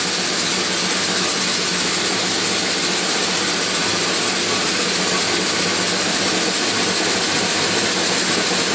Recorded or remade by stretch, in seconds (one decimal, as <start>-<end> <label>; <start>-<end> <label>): 0.0-8.7 recorded